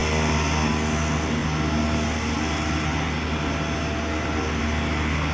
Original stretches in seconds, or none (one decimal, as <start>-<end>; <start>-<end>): 0.0-5.3